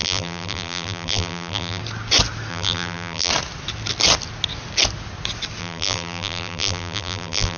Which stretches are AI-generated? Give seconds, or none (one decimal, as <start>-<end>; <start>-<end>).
0.0-1.8; 2.5-3.3; 5.6-7.6